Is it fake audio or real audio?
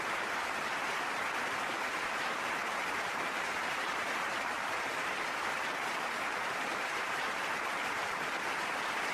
real